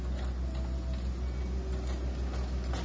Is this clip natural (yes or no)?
yes